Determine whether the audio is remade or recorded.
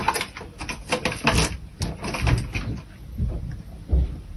recorded